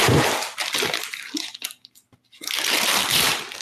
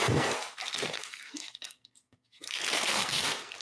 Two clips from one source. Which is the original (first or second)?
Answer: first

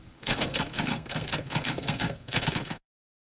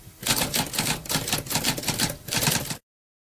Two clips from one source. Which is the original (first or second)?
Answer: second